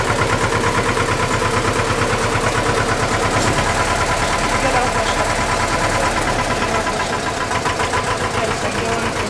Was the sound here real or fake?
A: real